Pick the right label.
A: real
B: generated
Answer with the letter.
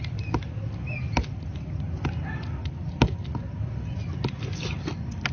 A